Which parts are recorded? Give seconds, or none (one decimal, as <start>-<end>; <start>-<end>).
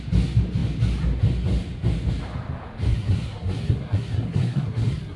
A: 0.0-2.9